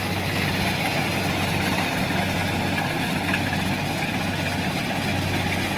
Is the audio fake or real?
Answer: real